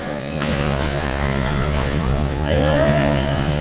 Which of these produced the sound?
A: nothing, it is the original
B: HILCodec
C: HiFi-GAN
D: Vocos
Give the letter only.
D